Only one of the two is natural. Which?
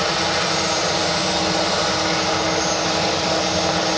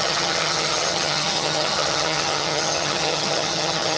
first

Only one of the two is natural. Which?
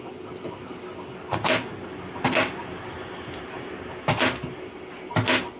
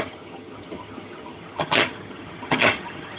first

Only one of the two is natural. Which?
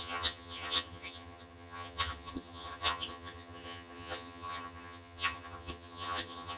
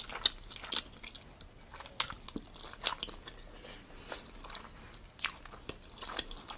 second